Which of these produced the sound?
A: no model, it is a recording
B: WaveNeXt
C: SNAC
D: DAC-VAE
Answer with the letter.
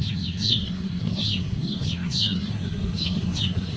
C